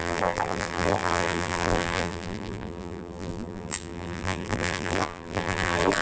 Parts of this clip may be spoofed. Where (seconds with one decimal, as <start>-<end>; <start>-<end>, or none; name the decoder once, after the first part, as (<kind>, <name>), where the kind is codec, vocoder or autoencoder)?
0.0-6.0 (vocoder, BigVGAN v2)